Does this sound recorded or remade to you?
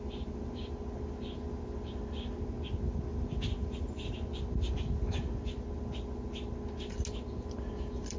recorded